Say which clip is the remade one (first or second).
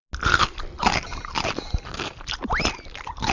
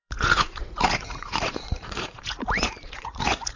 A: second